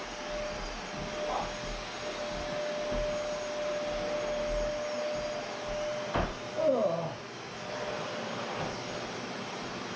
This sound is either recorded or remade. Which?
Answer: recorded